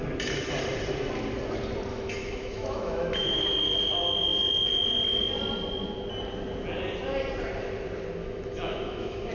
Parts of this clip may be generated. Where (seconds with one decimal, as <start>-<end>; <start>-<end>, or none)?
1.9-3.4; 8.2-9.3